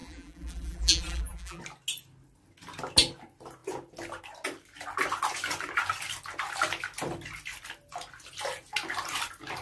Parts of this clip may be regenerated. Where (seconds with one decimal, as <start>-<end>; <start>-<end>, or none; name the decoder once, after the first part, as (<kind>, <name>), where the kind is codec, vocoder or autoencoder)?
0.0-1.6 (vocoder, BigVGAN v2)